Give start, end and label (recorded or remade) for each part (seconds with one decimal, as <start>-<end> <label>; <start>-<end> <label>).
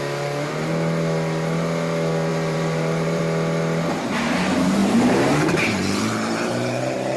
0.0-2.3 recorded; 2.3-3.2 remade; 3.2-4.8 recorded; 4.8-7.2 remade